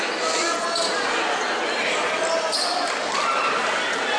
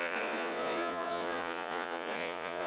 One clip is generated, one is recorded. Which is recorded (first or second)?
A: first